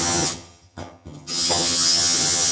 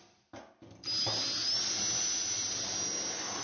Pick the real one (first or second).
second